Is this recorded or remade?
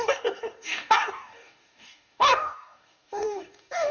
remade